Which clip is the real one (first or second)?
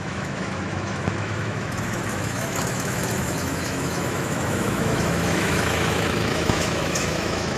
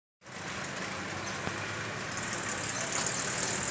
second